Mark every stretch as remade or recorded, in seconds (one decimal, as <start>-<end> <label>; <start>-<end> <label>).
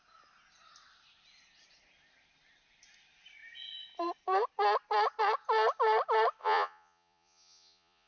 0.0-6.4 recorded; 6.4-8.1 remade